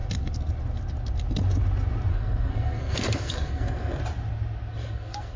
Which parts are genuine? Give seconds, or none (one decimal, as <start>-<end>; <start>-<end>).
0.0-2.1; 4.0-4.7